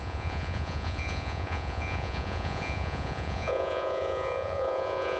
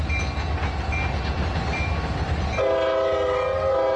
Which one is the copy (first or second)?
first